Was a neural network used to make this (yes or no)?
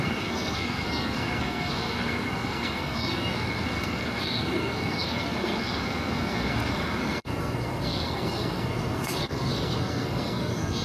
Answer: yes